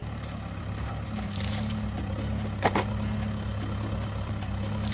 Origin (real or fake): real